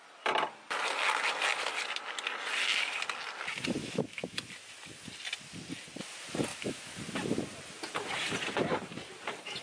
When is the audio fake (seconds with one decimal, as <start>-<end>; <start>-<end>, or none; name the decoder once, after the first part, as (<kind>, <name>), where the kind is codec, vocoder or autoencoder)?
3.8-4.4 (autoencoder, DAC-VAE); 6.5-7.0